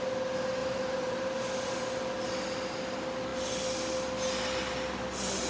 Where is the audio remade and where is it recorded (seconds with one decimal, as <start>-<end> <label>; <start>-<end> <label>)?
0.0-0.6 recorded; 0.6-1.8 remade; 1.8-5.5 recorded